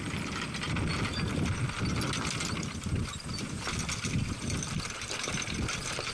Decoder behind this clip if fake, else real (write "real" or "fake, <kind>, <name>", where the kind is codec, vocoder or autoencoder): real